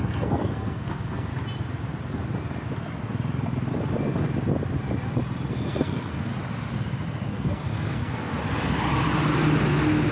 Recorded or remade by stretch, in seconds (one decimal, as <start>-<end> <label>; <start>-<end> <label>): 0.0-1.3 remade; 1.3-5.5 recorded; 5.5-6.3 remade; 6.3-7.3 recorded; 7.3-8.3 remade; 8.3-10.1 recorded